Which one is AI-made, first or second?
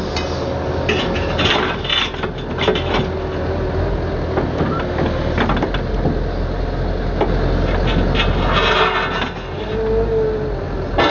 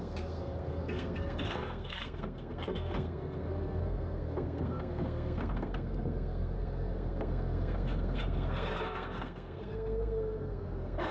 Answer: second